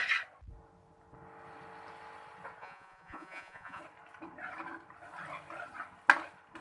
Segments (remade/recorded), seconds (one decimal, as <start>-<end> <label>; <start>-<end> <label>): 0.0-2.6 recorded; 2.6-3.8 remade; 3.8-6.6 recorded